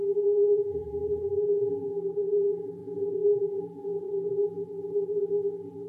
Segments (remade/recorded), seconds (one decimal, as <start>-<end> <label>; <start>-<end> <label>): 0.0-5.9 remade